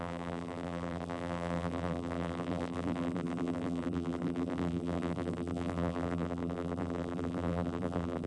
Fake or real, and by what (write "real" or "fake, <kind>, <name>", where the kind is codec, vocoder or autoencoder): fake, vocoder, BigVGAN v2